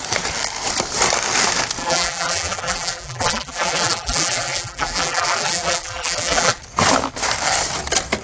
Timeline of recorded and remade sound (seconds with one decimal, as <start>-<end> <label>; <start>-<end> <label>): 0.0-1.8 recorded; 1.8-6.6 remade; 6.6-8.2 recorded